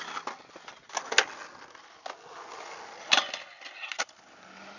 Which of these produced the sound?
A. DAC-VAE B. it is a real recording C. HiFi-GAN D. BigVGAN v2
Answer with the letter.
B